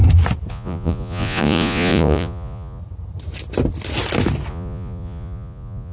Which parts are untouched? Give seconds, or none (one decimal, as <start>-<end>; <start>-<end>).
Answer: 0.0-0.5; 2.8-4.5